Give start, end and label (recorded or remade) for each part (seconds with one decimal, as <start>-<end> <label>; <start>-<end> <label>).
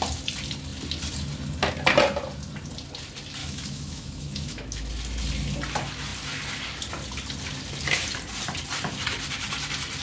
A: 0.0-3.4 recorded; 3.4-4.9 remade; 4.9-10.0 recorded